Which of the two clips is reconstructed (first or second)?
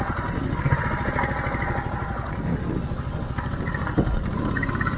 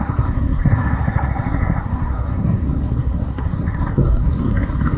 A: second